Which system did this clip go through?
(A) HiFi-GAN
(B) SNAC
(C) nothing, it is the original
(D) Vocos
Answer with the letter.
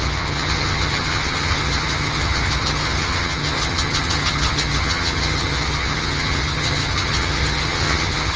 A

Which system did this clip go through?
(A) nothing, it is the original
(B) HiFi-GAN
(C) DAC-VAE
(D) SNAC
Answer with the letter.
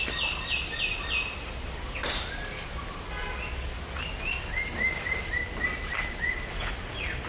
A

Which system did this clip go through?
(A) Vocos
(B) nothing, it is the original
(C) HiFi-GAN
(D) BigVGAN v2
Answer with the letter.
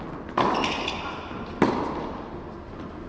B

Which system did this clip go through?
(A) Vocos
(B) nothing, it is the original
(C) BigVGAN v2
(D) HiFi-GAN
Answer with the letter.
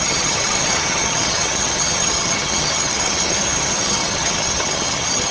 D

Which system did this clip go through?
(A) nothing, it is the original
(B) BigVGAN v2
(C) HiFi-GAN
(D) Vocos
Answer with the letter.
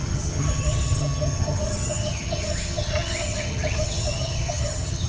C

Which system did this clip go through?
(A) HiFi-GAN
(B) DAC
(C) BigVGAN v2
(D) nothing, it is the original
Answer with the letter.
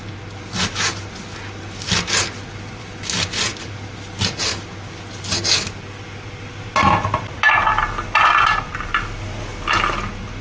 D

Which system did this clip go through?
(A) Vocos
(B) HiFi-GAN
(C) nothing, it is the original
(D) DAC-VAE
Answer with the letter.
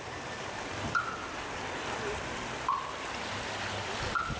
C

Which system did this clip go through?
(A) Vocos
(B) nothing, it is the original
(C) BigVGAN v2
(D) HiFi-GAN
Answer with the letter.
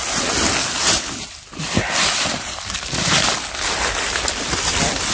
B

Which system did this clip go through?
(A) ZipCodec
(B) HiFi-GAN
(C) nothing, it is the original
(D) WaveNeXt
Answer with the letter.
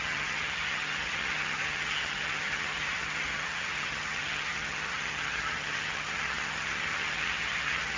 B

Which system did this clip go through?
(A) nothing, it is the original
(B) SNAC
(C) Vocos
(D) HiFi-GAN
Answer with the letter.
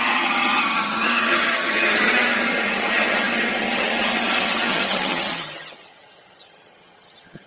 D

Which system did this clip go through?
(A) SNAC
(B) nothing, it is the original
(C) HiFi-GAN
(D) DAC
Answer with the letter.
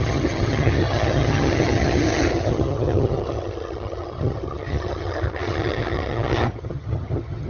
C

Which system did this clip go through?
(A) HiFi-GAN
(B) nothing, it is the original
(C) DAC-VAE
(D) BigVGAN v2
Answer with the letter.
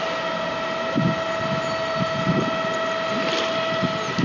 B